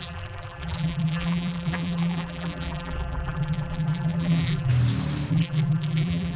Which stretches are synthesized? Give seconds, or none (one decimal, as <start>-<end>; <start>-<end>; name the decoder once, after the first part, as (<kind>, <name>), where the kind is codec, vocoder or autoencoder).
0.0-4.7 (vocoder, BigVGAN v2); 5.3-6.4